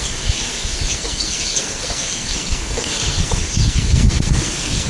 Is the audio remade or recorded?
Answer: remade